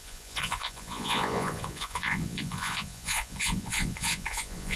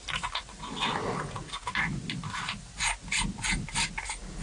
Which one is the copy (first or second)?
first